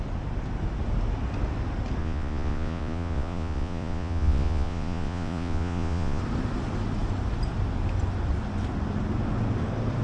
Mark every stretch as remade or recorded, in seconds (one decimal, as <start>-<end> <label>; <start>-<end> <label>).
0.0-2.0 recorded; 2.0-6.2 remade; 6.2-10.0 recorded